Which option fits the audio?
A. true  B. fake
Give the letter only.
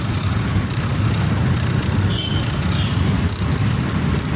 A